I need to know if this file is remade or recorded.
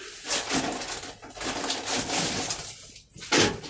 recorded